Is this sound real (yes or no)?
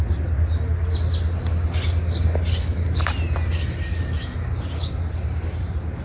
yes